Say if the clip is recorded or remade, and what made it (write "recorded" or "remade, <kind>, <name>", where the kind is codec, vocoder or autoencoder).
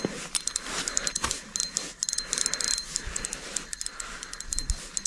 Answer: recorded